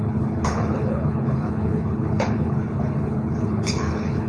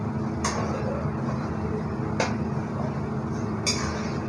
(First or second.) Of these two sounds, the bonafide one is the second